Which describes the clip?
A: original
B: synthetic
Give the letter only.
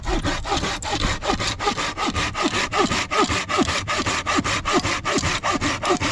A